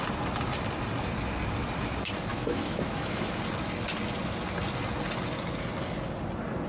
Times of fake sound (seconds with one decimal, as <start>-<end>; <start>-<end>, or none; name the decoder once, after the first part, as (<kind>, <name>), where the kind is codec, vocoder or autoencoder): 2.3-3.4 (autoencoder, DAC-VAE)

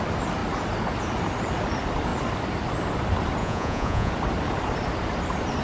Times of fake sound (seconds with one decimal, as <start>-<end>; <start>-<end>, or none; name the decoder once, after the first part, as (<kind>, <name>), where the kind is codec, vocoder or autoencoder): 3.4-4.1 (vocoder, Vocos)

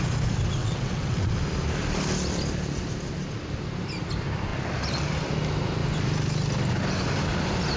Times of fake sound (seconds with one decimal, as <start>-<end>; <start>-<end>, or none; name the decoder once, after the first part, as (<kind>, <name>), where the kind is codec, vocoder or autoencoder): 0.6-1.3 (vocoder, WaveNeXt)

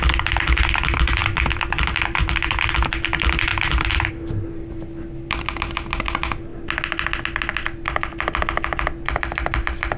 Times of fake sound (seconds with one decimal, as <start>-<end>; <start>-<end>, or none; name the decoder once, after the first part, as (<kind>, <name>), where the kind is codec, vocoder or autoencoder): 1.2-2.9 (vocoder, BigVGAN v2); 3.5-4.1

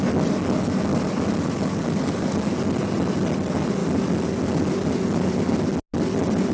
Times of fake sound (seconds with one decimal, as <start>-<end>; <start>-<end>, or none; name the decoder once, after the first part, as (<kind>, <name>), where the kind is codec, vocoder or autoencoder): 0.9-2.3 (vocoder, BigVGAN v2); 3.8-5.4